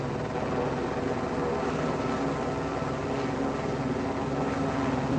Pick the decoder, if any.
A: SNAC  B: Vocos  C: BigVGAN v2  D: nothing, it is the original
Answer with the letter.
D